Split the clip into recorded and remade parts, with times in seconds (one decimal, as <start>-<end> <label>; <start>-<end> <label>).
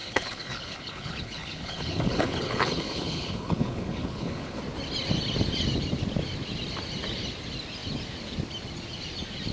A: 0.0-4.6 remade; 4.6-9.5 recorded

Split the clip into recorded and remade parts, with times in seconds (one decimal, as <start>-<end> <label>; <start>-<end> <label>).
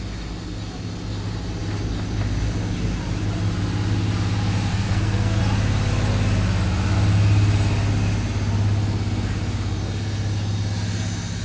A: 0.0-4.7 recorded; 4.7-5.4 remade; 5.4-11.4 recorded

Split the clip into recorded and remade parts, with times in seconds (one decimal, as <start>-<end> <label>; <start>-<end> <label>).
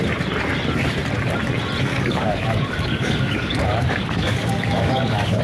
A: 0.0-1.9 recorded; 1.9-5.4 remade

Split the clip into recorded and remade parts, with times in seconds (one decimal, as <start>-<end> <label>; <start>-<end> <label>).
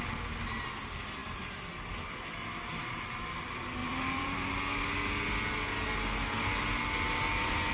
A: 0.0-2.7 recorded; 2.7-3.3 remade; 3.3-3.8 recorded; 3.8-4.5 remade; 4.5-7.7 recorded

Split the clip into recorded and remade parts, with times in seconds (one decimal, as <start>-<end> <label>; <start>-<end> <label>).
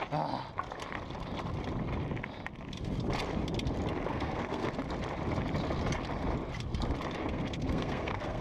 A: 0.0-4.1 recorded; 4.1-4.7 remade; 4.7-7.2 recorded; 7.2-8.4 remade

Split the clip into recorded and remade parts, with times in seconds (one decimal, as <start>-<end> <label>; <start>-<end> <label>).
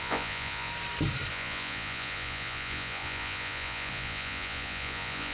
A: 0.0-0.7 remade; 0.7-1.3 recorded; 1.3-5.3 remade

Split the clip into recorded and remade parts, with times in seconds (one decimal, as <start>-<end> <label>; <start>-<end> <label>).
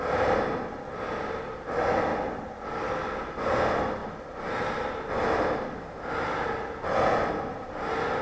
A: 0.0-8.2 recorded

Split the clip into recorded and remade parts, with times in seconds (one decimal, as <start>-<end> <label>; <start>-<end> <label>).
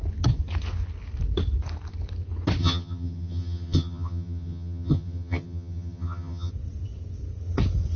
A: 0.0-2.6 recorded; 2.6-6.5 remade; 6.5-8.0 recorded